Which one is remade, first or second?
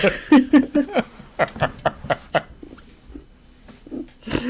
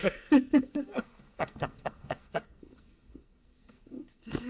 second